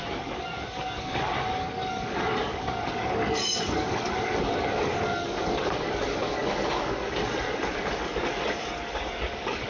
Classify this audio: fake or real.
fake